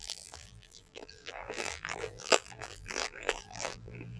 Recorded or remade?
remade